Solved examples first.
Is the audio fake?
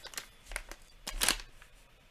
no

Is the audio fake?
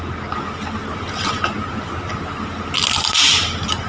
no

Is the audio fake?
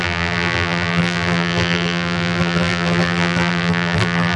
yes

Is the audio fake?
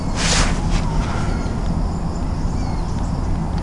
no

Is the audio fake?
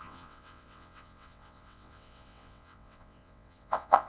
yes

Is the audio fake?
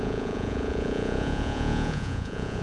yes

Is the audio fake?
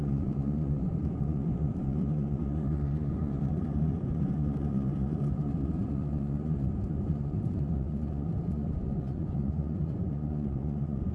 yes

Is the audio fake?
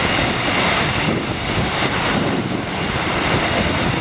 no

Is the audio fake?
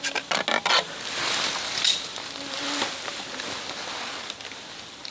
no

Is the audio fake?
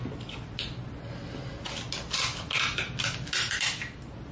no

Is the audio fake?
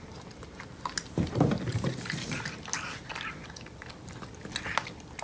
no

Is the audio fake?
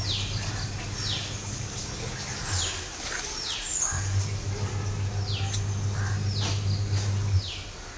no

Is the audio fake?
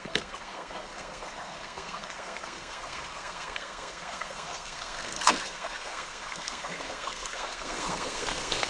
yes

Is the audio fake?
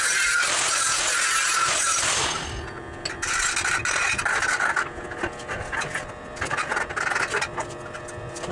no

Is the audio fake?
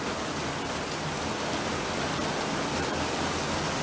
no